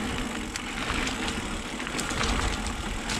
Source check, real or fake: real